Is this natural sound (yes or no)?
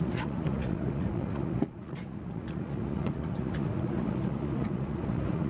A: no